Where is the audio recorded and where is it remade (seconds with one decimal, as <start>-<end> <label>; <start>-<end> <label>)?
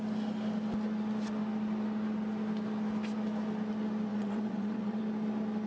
0.0-4.1 recorded; 4.1-5.0 remade; 5.0-5.7 recorded